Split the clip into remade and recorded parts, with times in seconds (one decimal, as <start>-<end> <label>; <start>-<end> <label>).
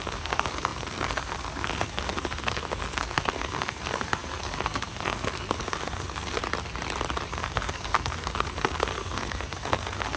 0.0-6.4 remade; 6.4-7.3 recorded; 7.3-10.2 remade